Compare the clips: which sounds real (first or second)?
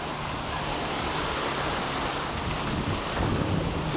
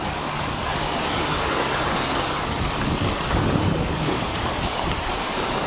first